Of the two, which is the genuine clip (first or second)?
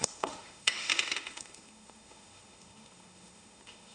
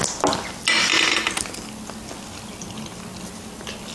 second